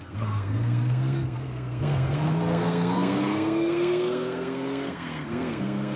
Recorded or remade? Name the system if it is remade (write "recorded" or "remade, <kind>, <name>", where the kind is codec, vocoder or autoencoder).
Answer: remade, codec, SNAC